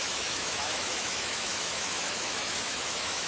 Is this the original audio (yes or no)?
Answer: no